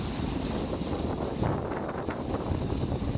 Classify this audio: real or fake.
real